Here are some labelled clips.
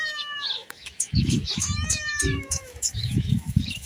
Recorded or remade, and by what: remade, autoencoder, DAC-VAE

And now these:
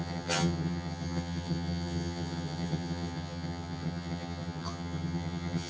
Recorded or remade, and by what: remade, vocoder, HiFi-GAN